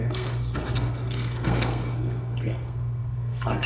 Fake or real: fake